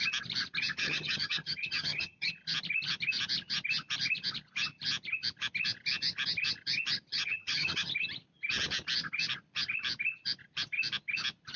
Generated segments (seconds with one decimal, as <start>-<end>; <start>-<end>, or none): 0.8-2.3; 7.1-7.9